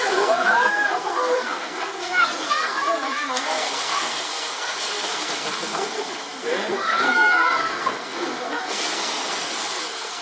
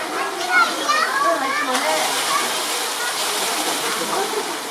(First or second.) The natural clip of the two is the second